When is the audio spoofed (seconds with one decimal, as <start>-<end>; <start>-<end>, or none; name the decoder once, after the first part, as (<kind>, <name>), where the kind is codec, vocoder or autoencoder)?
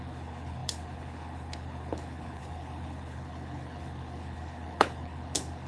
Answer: 0.0-5.7 (codec, HILCodec)